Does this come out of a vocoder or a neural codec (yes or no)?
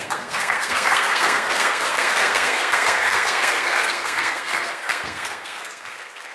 yes